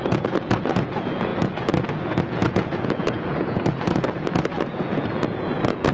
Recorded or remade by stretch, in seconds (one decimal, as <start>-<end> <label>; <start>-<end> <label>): 0.0-5.9 remade